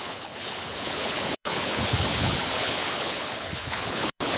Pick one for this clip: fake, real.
fake